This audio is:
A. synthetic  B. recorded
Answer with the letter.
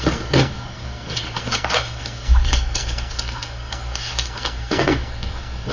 A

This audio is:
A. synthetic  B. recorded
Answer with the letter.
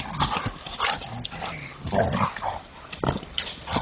A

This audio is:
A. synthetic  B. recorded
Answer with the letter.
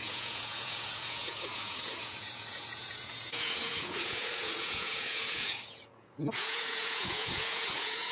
A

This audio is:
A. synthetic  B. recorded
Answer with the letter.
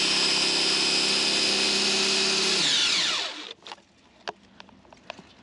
B